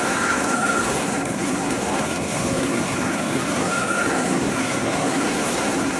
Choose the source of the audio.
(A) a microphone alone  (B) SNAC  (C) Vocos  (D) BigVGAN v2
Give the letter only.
B